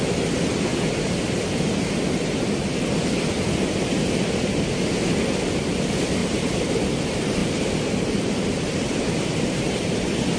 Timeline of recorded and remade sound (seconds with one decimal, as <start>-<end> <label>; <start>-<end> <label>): 0.0-0.7 recorded; 0.7-1.4 remade; 1.4-6.2 recorded; 6.2-6.8 remade; 6.8-7.4 recorded; 7.4-8.6 remade; 8.6-10.4 recorded